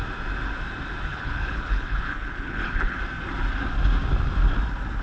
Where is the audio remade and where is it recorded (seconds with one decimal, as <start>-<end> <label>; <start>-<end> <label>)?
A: 0.0-1.1 recorded; 1.1-3.0 remade; 3.0-5.0 recorded